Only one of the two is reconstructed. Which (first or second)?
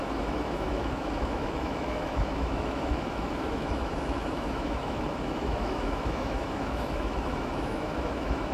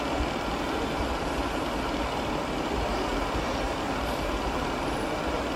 first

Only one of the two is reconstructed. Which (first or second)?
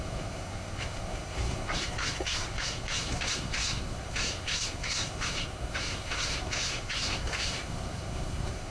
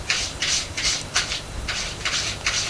first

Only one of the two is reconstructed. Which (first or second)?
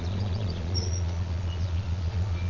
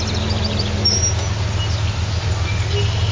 first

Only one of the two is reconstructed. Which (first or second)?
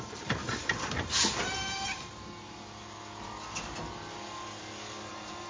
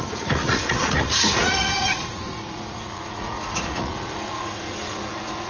second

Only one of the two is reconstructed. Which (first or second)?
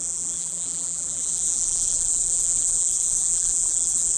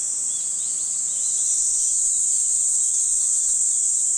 first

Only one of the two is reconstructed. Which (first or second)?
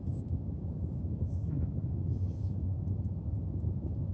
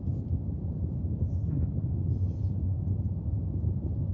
first